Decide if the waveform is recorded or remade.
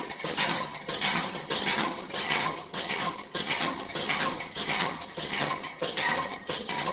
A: remade